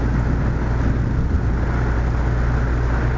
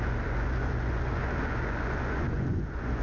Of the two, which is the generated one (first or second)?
second